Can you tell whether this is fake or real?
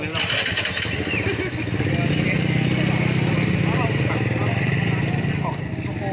real